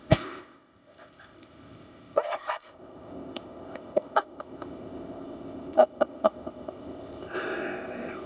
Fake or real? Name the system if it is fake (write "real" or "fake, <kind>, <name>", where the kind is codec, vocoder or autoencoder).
fake, codec, ZipCodec